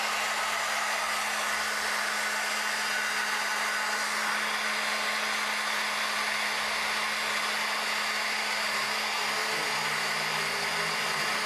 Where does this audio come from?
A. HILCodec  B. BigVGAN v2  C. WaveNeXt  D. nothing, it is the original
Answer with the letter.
D